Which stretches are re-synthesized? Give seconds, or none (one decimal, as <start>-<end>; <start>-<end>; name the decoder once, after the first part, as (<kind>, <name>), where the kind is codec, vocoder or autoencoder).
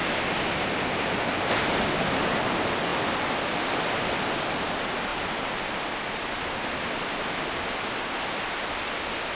2.9-4.2 (vocoder, BigVGAN v2)